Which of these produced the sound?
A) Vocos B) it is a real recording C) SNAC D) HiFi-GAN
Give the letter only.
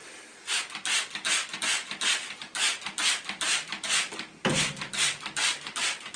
B